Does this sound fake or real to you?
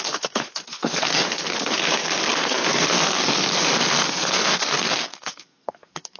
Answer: fake